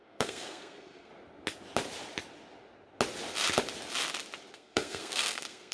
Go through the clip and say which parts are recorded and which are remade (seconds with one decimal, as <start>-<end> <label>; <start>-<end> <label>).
0.0-1.1 remade; 1.1-4.5 recorded; 4.5-5.7 remade